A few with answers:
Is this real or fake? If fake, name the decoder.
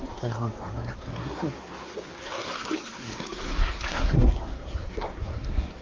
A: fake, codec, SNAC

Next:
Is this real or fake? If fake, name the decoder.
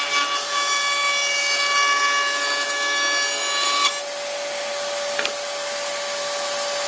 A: real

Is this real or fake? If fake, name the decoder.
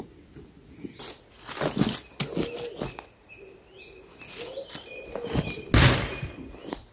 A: real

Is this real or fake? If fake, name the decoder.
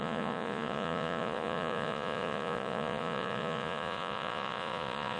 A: fake, vocoder, Vocos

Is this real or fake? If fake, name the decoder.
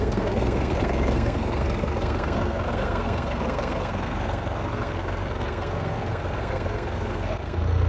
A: fake, codec, SNAC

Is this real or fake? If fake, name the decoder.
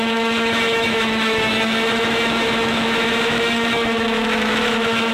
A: fake, autoencoder, DAC-VAE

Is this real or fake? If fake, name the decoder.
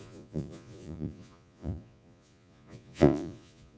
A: fake, vocoder, Vocos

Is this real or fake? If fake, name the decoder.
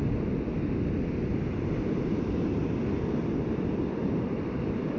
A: real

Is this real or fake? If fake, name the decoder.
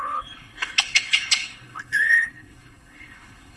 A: fake, codec, HILCodec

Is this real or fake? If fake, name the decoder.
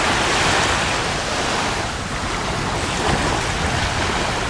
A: real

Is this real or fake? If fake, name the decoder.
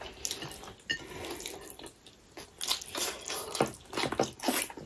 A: real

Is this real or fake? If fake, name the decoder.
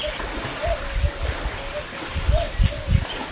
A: real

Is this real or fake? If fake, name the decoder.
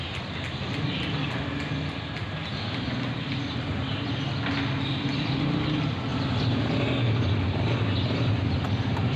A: real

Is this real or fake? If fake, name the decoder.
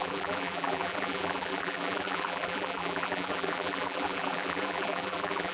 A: fake, vocoder, BigVGAN v2